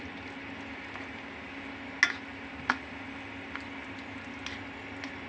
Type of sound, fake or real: real